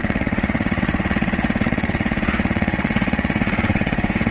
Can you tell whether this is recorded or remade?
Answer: remade